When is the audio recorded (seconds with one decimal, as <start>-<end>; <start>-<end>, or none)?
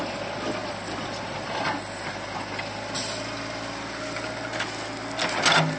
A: 0.0-5.8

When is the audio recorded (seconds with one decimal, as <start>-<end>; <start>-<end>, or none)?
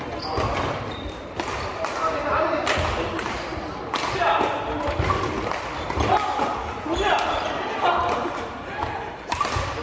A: 0.0-9.8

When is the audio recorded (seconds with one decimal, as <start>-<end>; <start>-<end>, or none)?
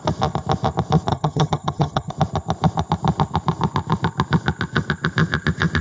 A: 0.0-1.1; 2.1-5.8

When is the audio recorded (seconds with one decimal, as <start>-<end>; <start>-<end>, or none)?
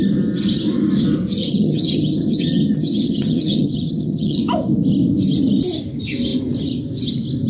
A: 0.0-1.5; 4.4-7.5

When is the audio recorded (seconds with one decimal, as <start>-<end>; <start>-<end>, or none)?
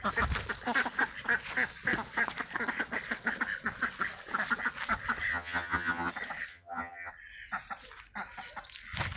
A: 0.0-5.3; 6.1-6.5; 7.1-9.2